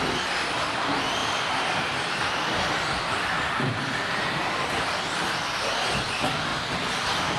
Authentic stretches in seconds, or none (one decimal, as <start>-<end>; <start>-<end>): 0.0-6.5